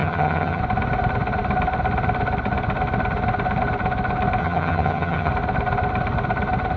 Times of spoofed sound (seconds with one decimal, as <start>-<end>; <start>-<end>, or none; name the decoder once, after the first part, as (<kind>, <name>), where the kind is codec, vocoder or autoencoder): 0.0-0.6 (vocoder, HiFi-GAN); 4.4-5.3